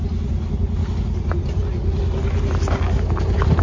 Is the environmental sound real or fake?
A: real